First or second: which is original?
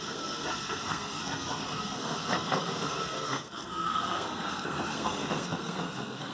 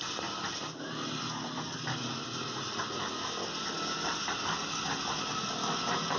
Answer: second